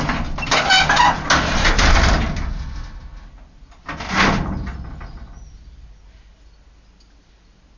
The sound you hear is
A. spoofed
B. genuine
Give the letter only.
B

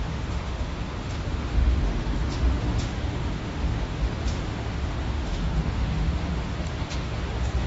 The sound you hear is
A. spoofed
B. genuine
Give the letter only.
A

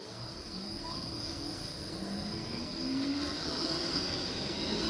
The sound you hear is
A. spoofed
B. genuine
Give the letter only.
A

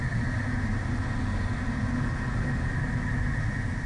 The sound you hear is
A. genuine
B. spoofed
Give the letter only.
A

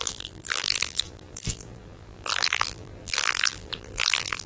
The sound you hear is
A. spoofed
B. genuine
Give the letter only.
A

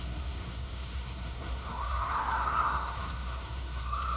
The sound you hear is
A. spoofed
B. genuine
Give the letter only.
A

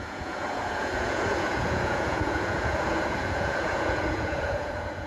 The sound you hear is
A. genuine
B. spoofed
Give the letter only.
B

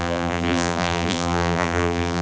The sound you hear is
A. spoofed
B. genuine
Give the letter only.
A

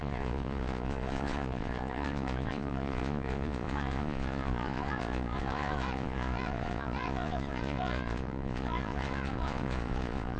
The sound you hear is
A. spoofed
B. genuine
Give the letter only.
A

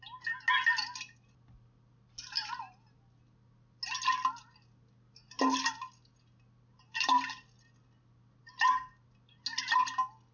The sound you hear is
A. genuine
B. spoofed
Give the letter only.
A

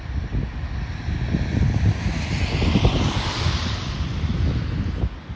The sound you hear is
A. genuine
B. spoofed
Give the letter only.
A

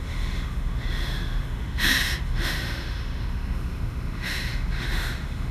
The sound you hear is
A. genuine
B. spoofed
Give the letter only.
B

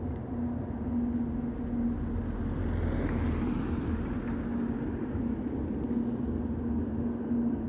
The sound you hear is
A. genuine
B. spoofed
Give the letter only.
A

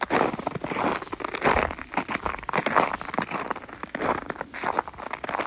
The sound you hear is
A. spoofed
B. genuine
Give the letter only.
B